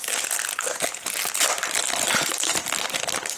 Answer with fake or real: real